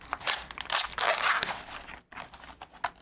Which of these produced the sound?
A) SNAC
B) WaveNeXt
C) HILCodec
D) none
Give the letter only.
D